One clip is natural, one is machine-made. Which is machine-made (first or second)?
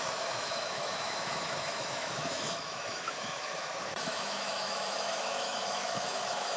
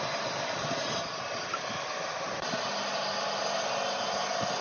first